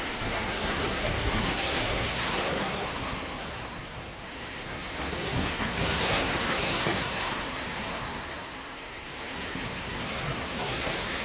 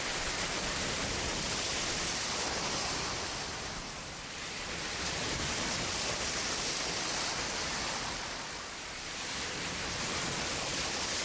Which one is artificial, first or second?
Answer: first